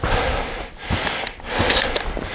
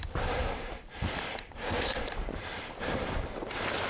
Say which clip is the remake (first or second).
second